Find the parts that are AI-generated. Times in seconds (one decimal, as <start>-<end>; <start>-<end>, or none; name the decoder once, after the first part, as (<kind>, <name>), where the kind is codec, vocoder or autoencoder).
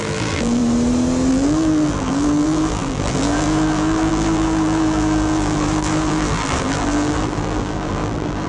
0.0-0.6 (vocoder, BigVGAN v2); 1.3-8.5